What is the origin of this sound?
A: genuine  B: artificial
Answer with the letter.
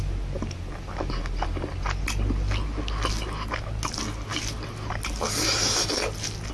A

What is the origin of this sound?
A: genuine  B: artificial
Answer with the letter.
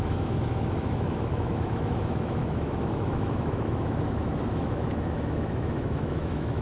B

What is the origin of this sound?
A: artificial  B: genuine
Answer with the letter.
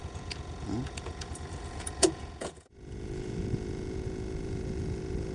A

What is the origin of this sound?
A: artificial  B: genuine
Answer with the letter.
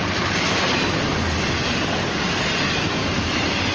B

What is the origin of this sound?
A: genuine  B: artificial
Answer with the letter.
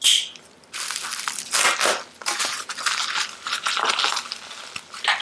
A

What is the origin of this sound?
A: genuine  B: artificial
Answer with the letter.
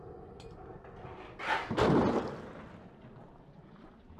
A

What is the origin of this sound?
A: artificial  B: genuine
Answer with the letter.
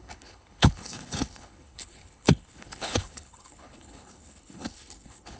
A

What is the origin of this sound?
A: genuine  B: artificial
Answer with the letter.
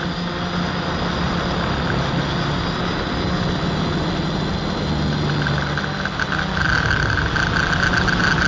A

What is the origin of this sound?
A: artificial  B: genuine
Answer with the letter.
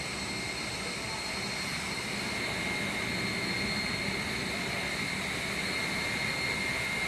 B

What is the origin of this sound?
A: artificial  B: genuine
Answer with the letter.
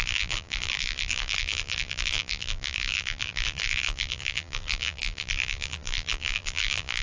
A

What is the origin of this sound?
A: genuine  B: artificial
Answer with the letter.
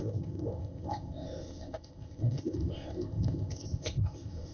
B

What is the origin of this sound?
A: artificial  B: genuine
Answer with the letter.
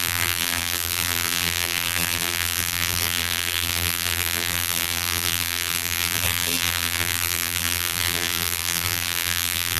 A